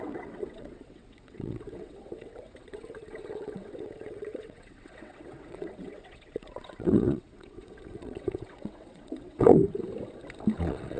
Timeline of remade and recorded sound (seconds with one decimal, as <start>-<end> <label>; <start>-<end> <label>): 0.0-9.6 remade; 9.6-10.6 recorded; 10.6-11.0 remade